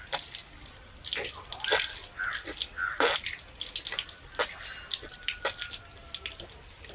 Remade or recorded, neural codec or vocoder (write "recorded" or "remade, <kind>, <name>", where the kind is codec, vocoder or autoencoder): recorded